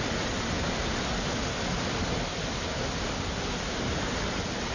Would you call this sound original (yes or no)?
yes